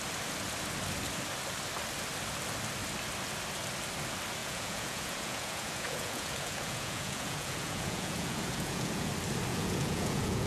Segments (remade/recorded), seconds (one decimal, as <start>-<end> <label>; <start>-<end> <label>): 0.0-4.4 recorded; 4.4-9.1 remade; 9.1-9.5 recorded; 9.5-10.5 remade